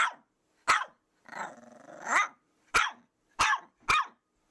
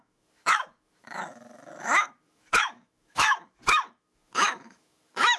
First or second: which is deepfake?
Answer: second